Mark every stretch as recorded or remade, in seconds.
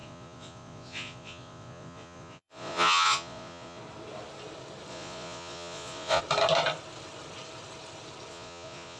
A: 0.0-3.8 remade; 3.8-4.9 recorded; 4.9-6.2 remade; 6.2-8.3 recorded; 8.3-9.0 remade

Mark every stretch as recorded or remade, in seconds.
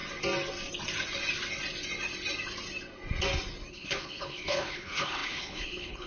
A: 0.0-3.7 recorded; 3.7-6.1 remade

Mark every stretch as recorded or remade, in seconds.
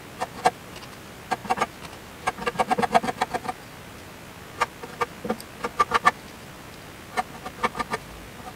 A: 0.0-8.6 recorded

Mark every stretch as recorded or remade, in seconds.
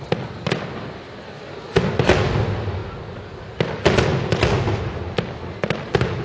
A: 0.0-6.2 recorded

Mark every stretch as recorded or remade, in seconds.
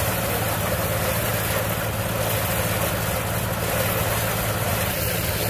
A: 0.0-1.3 remade; 1.3-4.6 recorded; 4.6-5.5 remade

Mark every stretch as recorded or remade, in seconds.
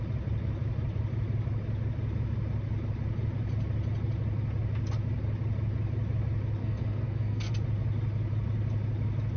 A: 0.0-6.6 recorded; 6.6-7.5 remade; 7.5-9.4 recorded